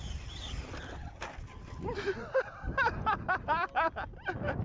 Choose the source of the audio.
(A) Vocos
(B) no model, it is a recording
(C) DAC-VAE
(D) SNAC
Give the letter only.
B